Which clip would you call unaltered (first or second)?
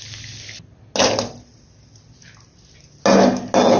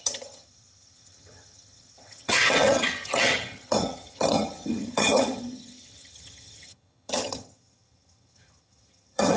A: first